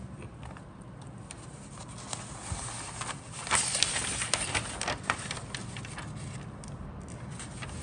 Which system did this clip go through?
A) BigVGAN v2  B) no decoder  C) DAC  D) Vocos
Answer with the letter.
B